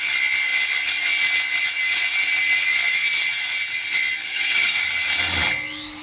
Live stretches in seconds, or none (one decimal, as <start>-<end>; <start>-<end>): 0.0-4.2; 4.9-6.0